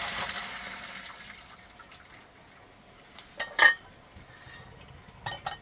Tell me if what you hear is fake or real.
real